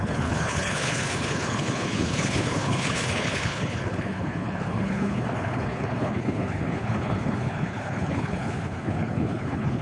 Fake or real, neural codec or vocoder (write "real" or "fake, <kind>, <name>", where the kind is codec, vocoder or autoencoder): fake, codec, HILCodec